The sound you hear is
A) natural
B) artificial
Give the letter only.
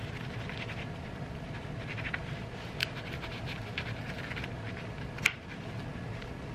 A